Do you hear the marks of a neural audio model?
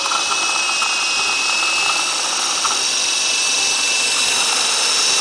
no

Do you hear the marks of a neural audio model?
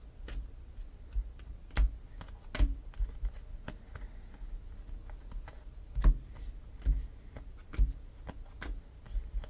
no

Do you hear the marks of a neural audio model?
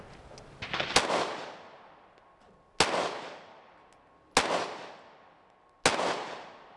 no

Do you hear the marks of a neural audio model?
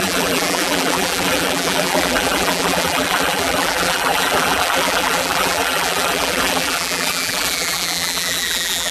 yes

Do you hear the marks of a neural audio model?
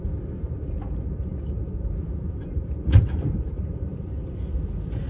yes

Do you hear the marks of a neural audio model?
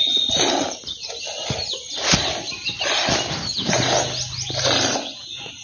no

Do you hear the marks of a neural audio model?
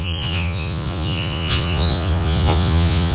yes